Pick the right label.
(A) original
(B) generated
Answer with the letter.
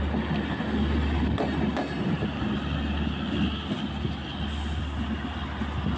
A